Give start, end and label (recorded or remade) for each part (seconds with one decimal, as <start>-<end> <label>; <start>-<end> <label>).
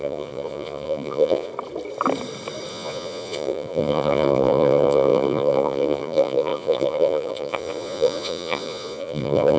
0.0-1.5 remade; 1.5-2.7 recorded; 2.7-9.6 remade